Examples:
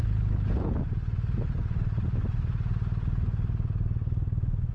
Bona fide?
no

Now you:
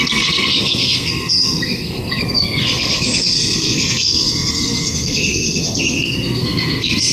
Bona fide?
no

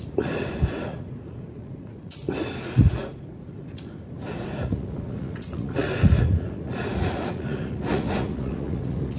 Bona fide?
no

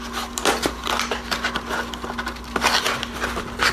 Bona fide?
yes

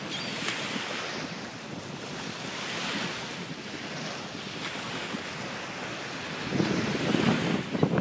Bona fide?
yes